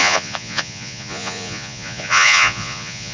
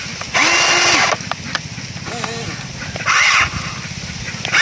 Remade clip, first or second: first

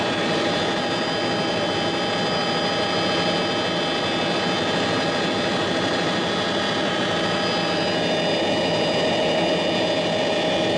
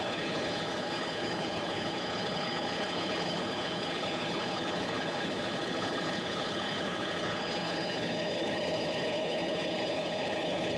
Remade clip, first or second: second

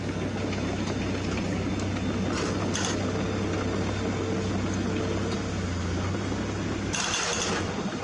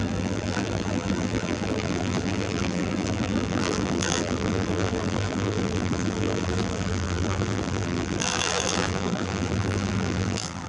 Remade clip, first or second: second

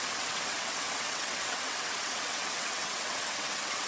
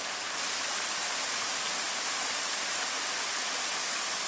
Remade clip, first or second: first